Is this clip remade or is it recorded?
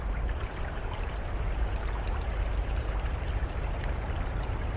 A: remade